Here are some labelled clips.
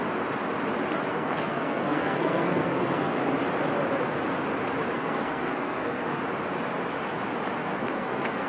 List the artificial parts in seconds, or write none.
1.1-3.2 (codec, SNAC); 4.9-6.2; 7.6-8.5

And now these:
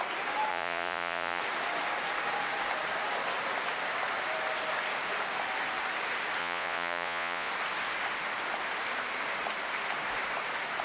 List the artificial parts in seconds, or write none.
0.5-1.4 (vocoder, Vocos); 6.4-7.5

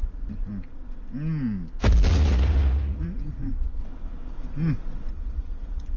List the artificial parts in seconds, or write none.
0.0-0.5 (vocoder, Vocos); 2.1-3.8; 5.1-6.0

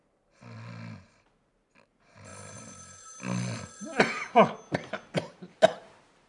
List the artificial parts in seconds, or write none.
none

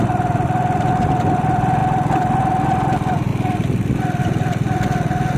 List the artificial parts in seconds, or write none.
none

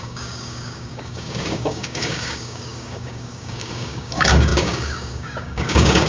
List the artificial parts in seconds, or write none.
0.0-6.1 (codec, DAC)

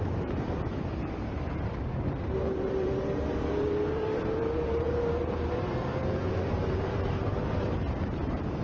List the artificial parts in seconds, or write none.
0.0-8.6 (vocoder, BigVGAN v2)